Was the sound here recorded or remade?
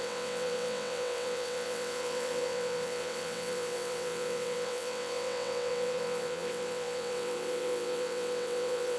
remade